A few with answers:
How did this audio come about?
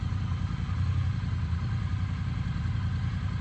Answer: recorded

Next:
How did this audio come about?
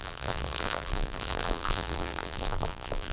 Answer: remade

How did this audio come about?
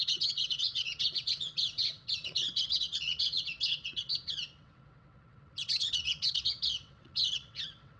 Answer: remade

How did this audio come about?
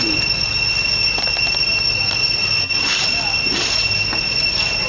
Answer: recorded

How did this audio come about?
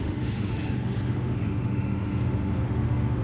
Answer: remade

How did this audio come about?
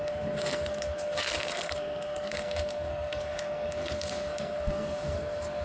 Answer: remade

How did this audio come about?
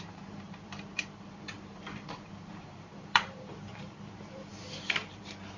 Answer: remade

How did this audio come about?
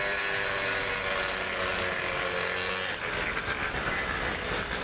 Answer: recorded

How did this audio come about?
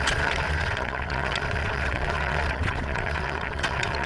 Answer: remade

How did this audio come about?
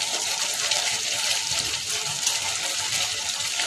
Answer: remade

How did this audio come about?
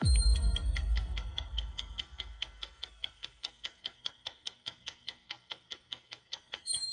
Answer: remade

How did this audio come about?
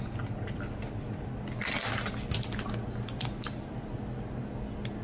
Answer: recorded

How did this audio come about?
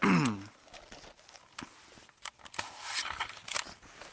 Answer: recorded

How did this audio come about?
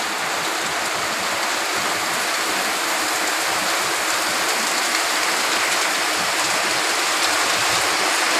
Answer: recorded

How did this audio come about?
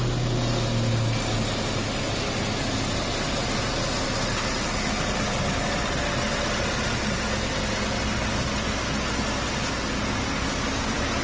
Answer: recorded